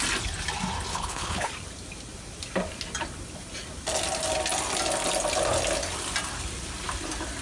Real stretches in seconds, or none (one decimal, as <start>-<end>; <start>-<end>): 0.0-0.9; 1.5-7.4